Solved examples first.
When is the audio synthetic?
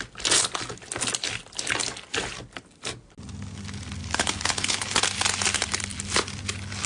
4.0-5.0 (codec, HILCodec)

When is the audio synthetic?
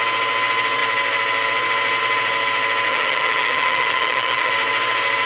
2.9-4.5 (vocoder, HiFi-GAN)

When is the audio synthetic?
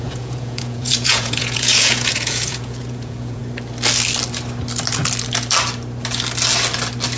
0.0-3.4 (vocoder, Vocos)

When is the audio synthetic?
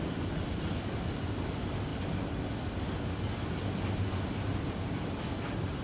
none